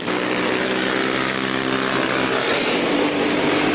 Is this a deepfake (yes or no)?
no